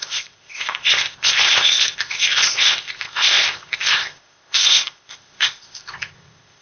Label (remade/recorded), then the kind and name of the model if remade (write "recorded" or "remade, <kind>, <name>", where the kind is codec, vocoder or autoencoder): remade, codec, ZipCodec